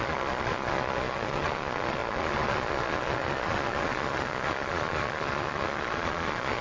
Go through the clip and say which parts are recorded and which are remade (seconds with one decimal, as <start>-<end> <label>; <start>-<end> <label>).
0.0-6.6 remade